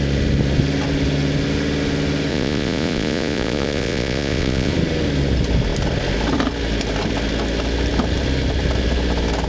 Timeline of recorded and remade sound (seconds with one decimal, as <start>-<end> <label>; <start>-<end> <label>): 0.0-2.3 recorded; 2.3-4.7 remade; 4.7-9.5 recorded